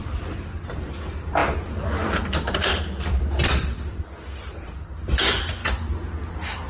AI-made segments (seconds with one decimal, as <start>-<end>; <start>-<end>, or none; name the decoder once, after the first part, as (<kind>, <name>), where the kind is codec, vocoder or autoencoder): 0.0-5.6 (vocoder, BigVGAN v2)